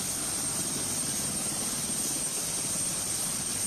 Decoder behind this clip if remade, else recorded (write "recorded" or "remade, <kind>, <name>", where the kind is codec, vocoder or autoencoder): recorded